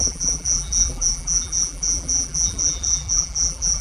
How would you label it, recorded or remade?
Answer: remade